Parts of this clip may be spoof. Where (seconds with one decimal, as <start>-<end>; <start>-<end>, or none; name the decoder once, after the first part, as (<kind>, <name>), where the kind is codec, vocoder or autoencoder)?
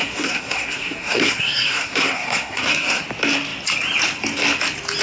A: 0.0-3.0 (codec, SNAC)